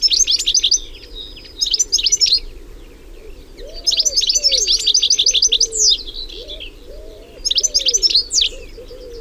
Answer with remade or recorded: recorded